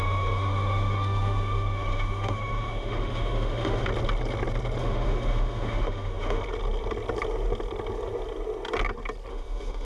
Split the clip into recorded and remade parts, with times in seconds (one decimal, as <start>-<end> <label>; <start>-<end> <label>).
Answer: 0.0-3.9 remade; 3.9-4.8 recorded; 4.8-6.4 remade; 6.4-9.3 recorded; 9.3-9.8 remade